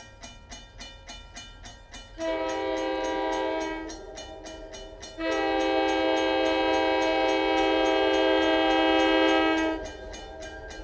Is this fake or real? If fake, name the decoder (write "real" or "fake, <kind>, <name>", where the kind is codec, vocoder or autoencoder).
real